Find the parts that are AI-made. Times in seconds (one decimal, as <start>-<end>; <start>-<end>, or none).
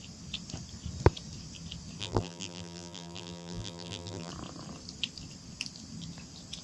2.0-4.3